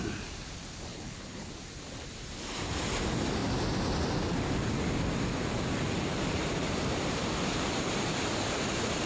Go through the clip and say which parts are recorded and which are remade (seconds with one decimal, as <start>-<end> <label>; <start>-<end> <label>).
0.0-0.9 recorded; 0.9-1.5 remade; 1.5-9.1 recorded